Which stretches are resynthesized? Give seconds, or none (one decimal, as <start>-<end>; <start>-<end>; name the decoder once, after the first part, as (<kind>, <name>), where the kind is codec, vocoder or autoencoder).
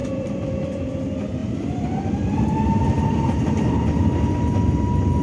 0.0-0.9 (vocoder, BigVGAN v2); 1.4-3.4